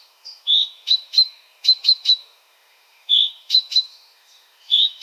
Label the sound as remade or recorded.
remade